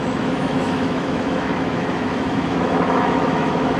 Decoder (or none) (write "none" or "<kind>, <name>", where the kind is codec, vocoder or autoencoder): autoencoder, DAC-VAE